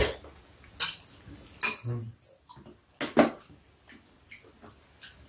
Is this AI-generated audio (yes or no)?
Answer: no